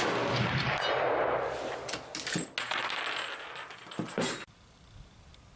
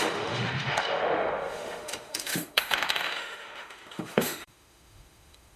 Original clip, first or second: first